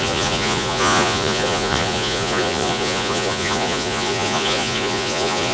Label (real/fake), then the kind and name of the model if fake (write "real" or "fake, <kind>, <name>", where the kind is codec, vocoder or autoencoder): fake, vocoder, Vocos